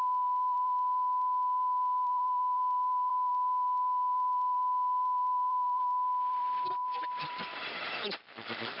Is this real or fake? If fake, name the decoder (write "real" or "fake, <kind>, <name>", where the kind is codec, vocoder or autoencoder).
fake, vocoder, BigVGAN v2